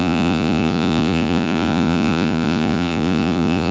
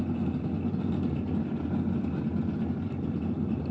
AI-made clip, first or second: first